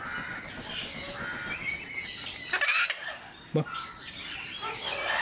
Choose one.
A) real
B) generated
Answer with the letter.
A